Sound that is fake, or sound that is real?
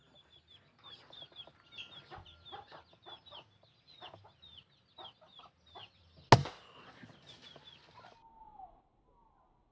real